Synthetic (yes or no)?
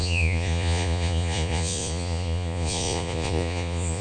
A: yes